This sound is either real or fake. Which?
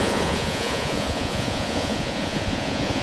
fake